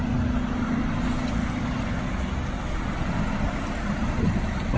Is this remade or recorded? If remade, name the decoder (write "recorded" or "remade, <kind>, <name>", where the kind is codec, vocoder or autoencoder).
recorded